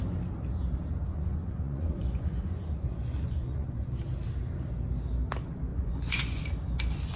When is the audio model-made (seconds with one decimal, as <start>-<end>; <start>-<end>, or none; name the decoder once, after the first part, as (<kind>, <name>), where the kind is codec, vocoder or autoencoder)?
1.1-4.0 (vocoder, Vocos); 5.7-6.4